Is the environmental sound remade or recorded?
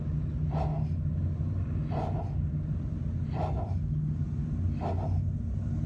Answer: recorded